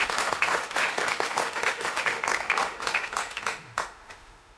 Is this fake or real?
fake